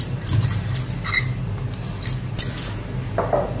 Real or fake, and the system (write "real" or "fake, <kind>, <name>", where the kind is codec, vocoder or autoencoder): real